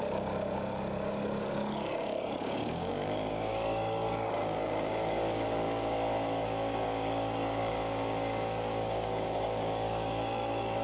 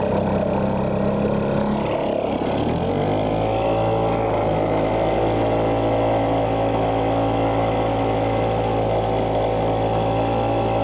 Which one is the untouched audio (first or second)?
second